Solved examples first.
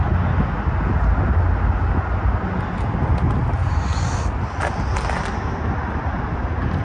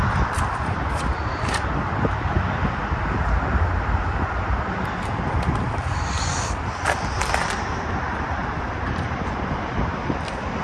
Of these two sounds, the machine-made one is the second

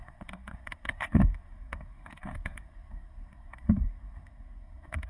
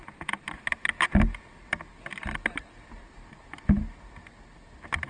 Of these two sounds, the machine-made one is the first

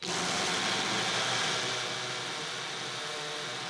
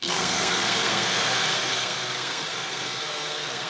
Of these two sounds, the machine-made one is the second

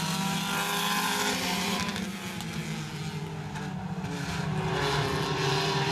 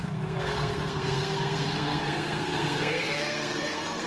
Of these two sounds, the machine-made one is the second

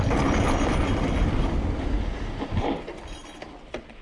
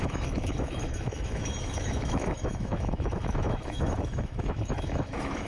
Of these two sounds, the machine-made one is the second